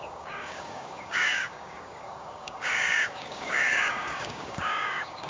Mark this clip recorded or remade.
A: remade